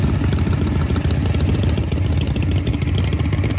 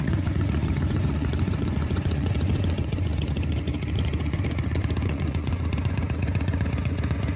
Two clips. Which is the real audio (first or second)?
first